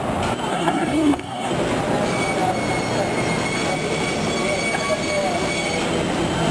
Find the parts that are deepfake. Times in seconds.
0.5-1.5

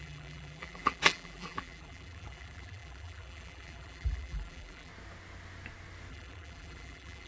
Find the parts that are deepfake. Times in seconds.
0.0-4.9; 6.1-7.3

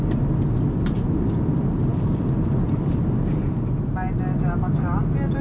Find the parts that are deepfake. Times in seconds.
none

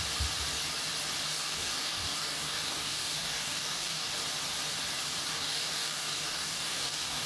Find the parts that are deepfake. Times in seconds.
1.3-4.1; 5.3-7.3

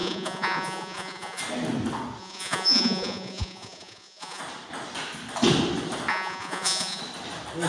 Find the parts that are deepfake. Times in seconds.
0.0-1.4; 2.2-4.4; 6.1-7.0

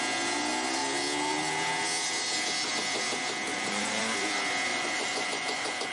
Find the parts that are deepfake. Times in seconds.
3.5-4.0; 4.7-5.9

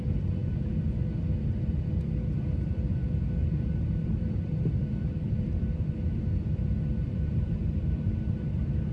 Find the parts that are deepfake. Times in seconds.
0.0-0.4; 2.3-8.9